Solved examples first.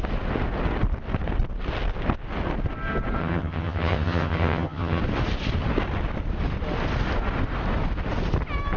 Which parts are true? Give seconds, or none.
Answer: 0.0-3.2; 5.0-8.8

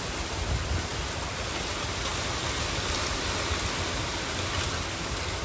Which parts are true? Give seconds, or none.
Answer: 0.0-5.4

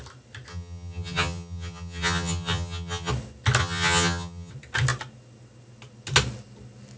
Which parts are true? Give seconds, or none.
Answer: 0.0-0.5; 3.1-3.6; 4.5-7.0

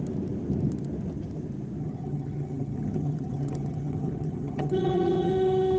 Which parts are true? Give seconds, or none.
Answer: 0.0-1.8; 5.3-5.8

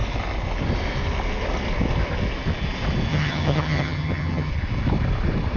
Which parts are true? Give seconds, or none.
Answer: 0.0-3.1; 4.5-5.6

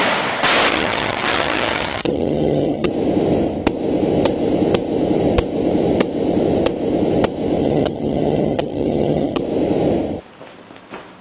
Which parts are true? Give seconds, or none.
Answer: 0.0-0.7; 2.9-7.6; 9.4-11.2

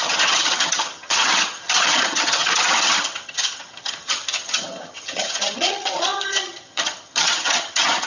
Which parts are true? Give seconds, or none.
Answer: none

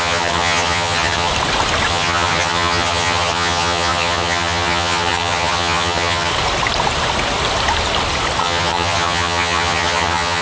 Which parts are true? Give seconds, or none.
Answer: 1.3-1.9; 6.3-8.4